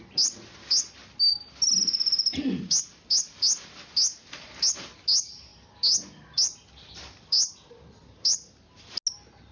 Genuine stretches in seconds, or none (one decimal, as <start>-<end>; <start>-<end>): 0.0-9.5

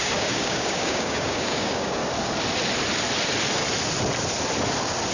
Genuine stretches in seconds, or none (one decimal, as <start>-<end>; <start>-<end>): 2.0-5.1

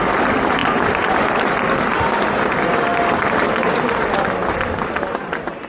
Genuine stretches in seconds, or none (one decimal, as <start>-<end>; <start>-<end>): 0.0-5.7

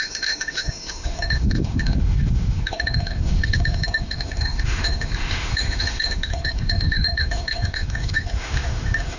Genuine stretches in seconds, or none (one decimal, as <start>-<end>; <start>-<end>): none

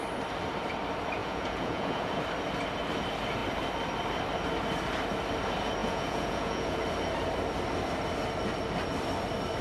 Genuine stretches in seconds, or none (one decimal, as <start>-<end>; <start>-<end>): 0.0-1.2; 2.2-5.8; 6.8-9.6

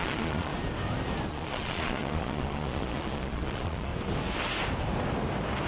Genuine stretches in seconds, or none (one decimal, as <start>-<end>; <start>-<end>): 0.5-1.3; 3.9-5.7

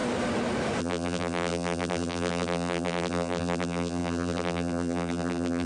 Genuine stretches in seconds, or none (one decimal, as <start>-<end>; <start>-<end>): 0.0-0.8